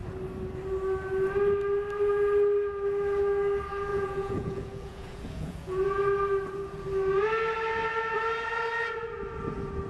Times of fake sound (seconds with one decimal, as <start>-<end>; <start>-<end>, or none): 3.9-6.0